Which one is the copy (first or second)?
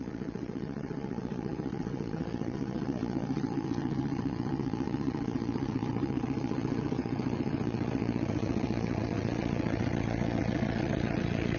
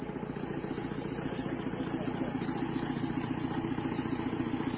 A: first